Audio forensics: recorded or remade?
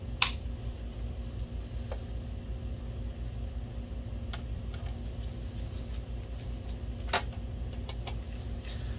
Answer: recorded